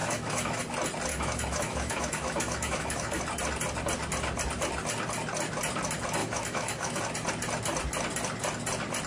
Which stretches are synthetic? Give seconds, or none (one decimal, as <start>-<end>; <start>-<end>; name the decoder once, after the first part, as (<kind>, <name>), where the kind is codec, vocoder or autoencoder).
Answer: 0.0-0.6 (autoencoder, DAC-VAE); 1.1-3.2; 6.2-7.0